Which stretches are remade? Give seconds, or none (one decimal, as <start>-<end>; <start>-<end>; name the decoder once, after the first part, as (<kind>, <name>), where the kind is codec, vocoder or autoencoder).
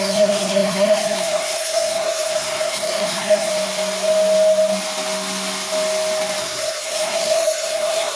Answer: 0.0-3.5 (codec, SNAC); 6.4-8.2